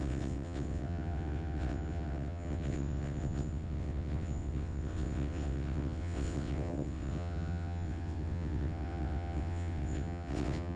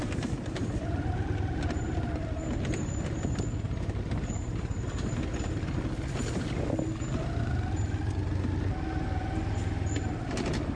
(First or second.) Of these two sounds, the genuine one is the second